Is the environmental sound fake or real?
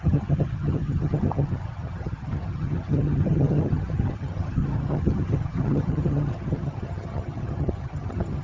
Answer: fake